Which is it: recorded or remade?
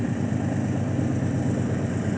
recorded